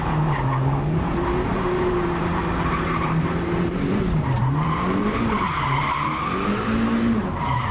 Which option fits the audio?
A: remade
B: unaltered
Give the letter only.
A